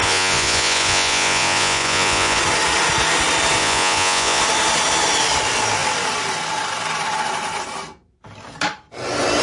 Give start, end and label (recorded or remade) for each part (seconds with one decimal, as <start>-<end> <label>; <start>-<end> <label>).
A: 0.0-2.4 remade; 2.4-3.6 recorded; 3.6-4.4 remade; 4.4-9.4 recorded